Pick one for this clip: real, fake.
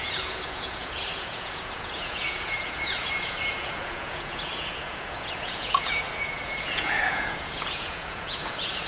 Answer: fake